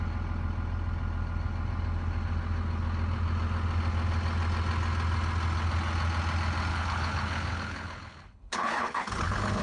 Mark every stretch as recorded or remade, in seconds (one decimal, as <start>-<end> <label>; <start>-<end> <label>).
0.0-6.7 recorded; 6.7-9.6 remade